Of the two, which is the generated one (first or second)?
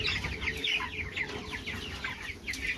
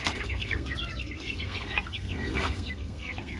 second